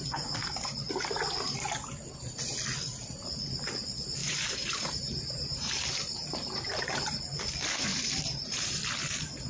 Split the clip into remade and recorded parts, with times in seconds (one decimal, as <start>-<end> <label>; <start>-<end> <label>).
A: 0.0-4.2 recorded; 4.2-7.2 remade; 7.2-7.9 recorded; 7.9-8.6 remade; 8.6-9.5 recorded